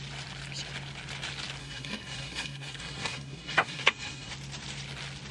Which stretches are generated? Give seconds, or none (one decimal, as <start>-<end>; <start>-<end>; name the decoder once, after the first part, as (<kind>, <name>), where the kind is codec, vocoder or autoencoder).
1.6-4.3 (codec, SNAC)